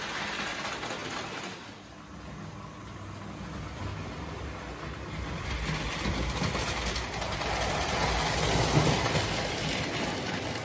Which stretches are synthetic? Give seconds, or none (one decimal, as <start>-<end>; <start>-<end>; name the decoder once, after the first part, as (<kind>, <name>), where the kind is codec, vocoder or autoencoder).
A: none